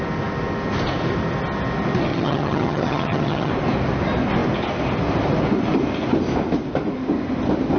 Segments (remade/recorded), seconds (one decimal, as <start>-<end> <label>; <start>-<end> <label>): 0.0-2.1 recorded; 2.1-3.5 remade; 3.5-7.8 recorded